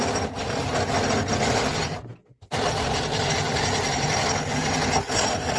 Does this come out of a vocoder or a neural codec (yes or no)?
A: no